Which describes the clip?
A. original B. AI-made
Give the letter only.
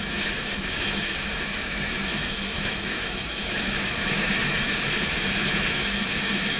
B